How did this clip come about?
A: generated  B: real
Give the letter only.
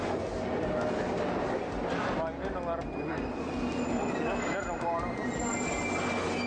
B